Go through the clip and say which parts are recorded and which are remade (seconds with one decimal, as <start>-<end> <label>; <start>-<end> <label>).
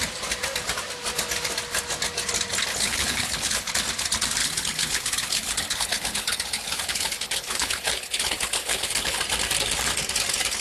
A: 0.0-2.7 recorded; 2.7-3.7 remade; 3.7-4.4 recorded; 4.4-9.2 remade; 9.2-10.6 recorded